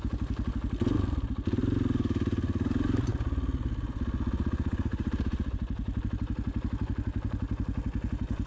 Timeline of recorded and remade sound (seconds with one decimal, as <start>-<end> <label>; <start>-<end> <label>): 0.0-4.9 recorded; 4.9-6.0 remade; 6.0-8.5 recorded